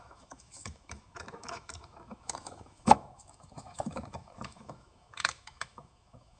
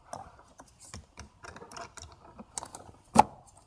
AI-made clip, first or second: first